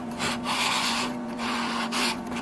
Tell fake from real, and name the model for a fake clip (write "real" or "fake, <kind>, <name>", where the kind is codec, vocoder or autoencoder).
fake, vocoder, Vocos